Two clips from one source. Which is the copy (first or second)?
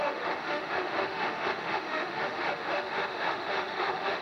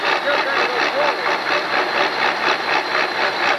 first